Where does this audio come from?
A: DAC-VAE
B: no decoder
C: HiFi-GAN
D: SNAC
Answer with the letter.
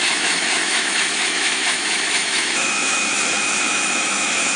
A